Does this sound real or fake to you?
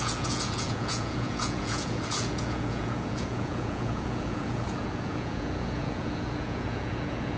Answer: fake